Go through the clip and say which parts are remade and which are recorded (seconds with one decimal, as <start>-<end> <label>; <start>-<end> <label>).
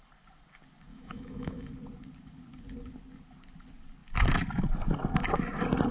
0.0-0.9 recorded; 0.9-1.7 remade; 1.7-5.9 recorded